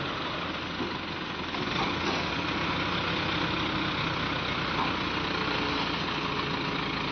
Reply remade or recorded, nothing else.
recorded